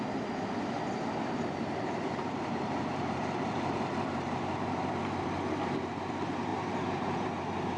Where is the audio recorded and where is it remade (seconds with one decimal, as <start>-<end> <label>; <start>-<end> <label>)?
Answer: 0.0-0.9 recorded; 0.9-4.8 remade; 4.8-6.5 recorded; 6.5-7.3 remade; 7.3-7.8 recorded